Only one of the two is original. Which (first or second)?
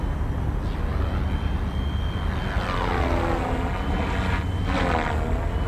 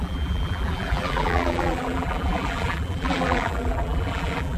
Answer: first